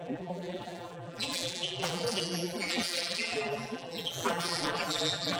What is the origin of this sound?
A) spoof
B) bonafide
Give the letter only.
A